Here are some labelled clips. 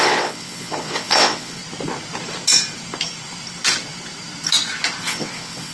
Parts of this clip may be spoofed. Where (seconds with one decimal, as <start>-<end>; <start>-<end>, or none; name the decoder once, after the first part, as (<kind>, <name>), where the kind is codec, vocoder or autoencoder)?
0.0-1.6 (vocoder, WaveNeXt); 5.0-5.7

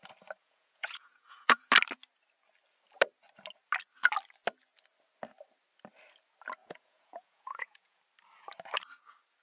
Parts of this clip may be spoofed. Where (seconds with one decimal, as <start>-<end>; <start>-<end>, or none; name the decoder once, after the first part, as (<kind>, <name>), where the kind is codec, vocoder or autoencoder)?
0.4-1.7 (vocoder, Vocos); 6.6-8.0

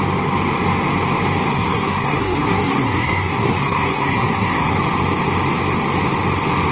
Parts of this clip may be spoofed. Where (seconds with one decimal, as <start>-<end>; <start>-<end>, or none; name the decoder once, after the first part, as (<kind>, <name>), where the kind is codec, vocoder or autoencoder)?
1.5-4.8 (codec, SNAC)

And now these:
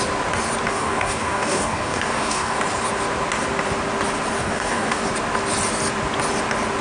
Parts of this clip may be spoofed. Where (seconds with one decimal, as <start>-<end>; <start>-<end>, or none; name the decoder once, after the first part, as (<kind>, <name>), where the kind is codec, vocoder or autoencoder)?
0.7-2.6 (codec, DAC); 4.4-5.0

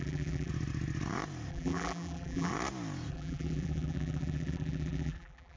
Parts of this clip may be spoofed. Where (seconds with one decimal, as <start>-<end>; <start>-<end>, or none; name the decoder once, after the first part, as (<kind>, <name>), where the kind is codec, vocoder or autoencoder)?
0.0-0.5 (vocoder, BigVGAN v2); 1.5-2.5; 3.1-5.6